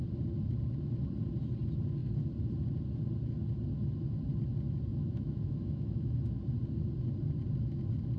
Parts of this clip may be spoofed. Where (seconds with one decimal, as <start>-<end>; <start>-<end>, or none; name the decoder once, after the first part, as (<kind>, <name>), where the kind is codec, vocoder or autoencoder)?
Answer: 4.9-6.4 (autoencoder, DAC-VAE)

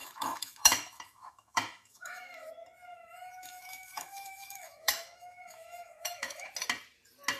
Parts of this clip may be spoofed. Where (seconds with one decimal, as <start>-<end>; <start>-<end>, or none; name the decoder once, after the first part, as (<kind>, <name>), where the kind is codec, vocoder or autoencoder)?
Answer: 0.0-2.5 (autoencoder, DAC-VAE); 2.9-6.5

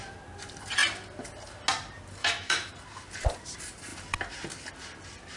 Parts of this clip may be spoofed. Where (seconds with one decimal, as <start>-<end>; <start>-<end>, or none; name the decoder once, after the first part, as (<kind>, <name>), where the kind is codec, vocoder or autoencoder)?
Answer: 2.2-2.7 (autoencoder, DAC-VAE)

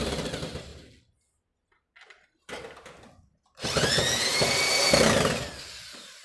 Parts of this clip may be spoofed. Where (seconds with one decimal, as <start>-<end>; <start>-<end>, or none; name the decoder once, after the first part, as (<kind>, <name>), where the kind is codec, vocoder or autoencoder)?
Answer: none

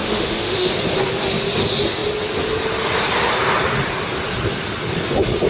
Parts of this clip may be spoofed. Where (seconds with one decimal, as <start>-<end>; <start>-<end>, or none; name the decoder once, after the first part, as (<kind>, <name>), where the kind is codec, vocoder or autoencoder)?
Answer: 0.0-0.7 (autoencoder, DAC-VAE)